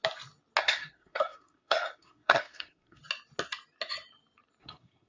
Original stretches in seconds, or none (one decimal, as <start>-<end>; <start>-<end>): 0.0-0.6; 3.0-4.6